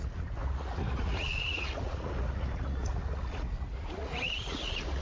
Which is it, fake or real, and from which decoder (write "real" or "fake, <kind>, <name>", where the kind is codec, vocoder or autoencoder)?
fake, vocoder, Vocos